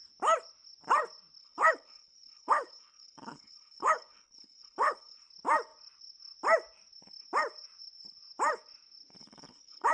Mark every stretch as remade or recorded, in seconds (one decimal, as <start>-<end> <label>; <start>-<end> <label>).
0.0-1.4 recorded; 1.4-5.2 remade; 5.2-9.2 recorded; 9.2-9.9 remade